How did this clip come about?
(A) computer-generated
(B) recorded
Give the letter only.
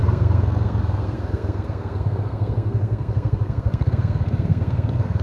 A